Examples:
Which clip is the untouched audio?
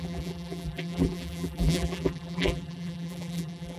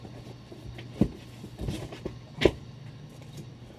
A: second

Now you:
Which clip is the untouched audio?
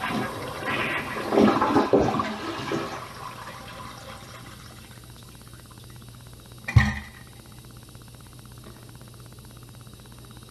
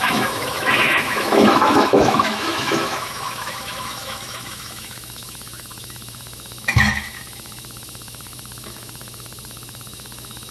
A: first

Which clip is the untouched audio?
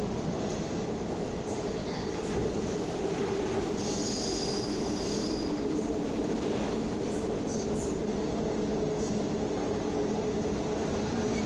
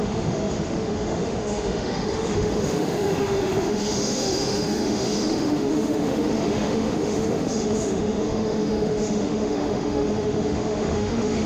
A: first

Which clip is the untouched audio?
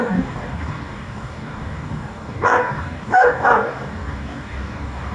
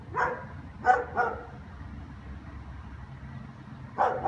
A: second